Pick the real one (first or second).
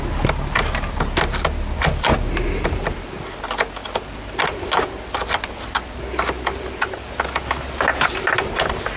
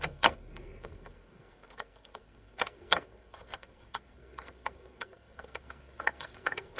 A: first